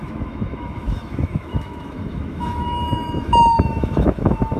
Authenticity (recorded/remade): remade